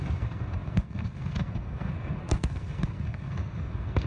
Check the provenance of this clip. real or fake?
fake